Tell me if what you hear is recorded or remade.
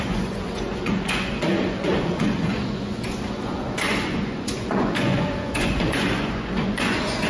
remade